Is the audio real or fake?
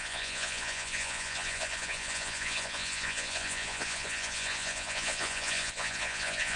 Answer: fake